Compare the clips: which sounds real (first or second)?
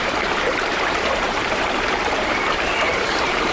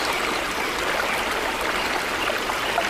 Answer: second